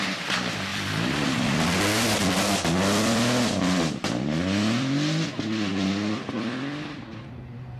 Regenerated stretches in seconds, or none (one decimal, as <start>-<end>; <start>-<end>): 0.7-5.3; 5.7-7.2